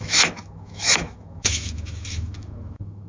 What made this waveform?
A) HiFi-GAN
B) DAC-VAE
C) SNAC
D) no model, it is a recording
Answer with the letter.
B